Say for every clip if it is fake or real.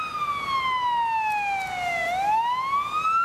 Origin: real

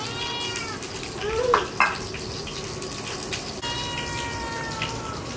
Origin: real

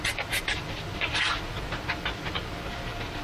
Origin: real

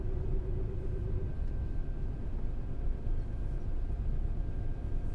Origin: real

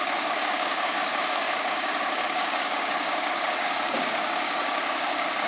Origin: fake